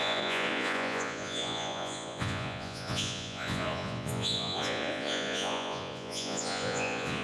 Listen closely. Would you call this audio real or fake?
fake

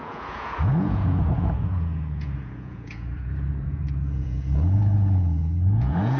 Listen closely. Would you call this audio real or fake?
fake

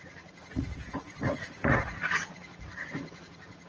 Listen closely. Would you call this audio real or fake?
fake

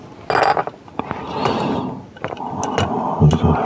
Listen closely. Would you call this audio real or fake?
real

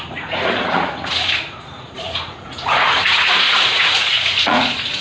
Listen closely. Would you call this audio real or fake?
fake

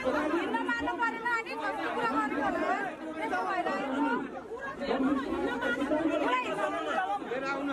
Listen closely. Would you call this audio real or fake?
real